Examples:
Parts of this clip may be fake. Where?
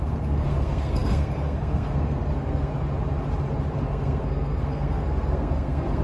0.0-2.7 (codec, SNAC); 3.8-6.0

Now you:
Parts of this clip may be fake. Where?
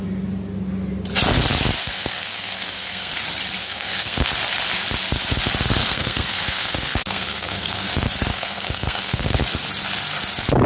1.8-3.1 (codec, SNAC); 3.6-4.3; 5.8-7.9; 8.3-9.4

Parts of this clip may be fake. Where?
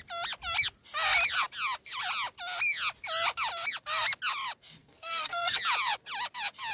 4.8-5.6 (codec, SNAC)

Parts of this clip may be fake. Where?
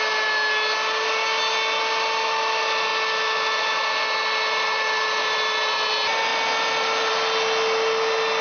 none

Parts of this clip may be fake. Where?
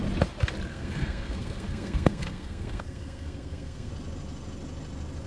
0.7-3.9 (codec, SNAC)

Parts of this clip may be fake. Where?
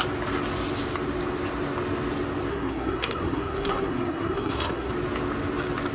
2.5-4.9 (codec, SNAC)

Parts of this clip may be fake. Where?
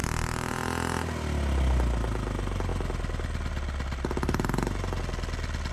none